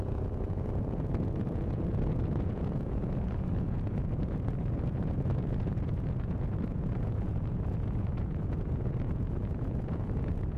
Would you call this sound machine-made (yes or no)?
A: yes